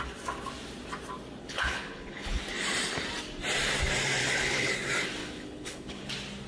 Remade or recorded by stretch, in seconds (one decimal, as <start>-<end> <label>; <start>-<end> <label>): 0.0-1.4 recorded; 1.4-2.4 remade; 2.4-4.2 recorded; 4.2-4.7 remade; 4.7-5.2 recorded; 5.2-6.1 remade; 6.1-6.5 recorded